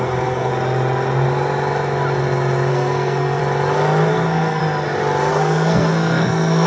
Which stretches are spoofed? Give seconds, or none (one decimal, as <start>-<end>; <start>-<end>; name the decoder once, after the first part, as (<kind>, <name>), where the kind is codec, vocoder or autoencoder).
0.0-0.5 (codec, SNAC); 2.7-3.4; 4.1-4.6; 5.3-6.7

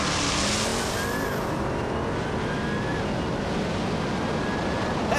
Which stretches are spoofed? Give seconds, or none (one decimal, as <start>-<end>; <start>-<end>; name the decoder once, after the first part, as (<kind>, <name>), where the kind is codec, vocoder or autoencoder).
none

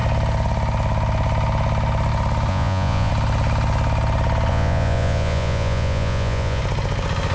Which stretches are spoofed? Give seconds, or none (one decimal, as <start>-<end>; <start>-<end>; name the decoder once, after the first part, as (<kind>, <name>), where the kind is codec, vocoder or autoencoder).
2.5-3.1 (vocoder, Vocos); 4.5-6.6

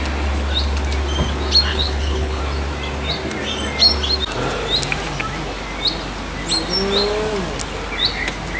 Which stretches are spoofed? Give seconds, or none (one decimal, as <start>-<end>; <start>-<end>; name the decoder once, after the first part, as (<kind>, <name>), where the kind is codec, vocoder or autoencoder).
1.7-2.4 (codec, HILCodec)

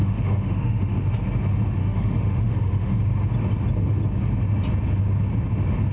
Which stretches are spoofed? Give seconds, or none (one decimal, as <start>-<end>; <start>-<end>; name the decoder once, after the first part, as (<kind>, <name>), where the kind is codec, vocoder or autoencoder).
0.0-1.1 (autoencoder, DAC-VAE); 1.8-3.0